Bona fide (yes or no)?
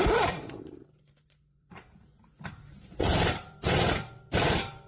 no